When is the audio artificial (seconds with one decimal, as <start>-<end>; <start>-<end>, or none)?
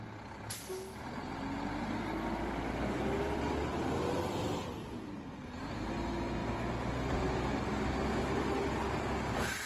6.4-7.3